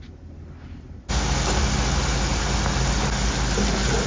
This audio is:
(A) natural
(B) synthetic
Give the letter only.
A